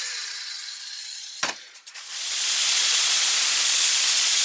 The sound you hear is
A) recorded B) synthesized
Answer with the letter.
B